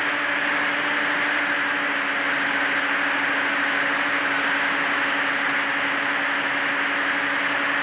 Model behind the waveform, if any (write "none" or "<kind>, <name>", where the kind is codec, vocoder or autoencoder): none